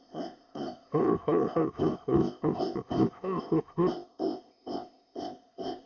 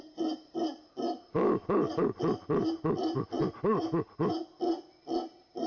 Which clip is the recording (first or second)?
second